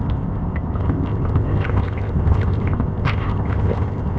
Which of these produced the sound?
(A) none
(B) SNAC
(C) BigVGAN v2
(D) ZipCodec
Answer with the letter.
D